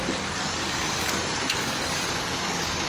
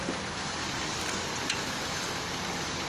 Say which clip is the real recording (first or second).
second